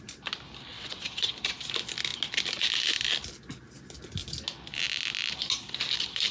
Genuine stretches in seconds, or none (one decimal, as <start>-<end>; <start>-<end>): 0.0-0.7; 1.3-6.3